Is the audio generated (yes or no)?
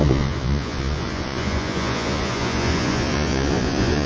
yes